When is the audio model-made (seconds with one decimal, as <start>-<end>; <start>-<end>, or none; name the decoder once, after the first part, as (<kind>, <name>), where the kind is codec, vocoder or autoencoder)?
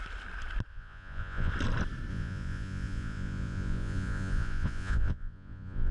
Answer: 0.7-1.5 (vocoder, Vocos); 2.1-5.9